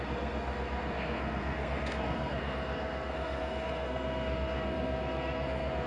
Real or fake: fake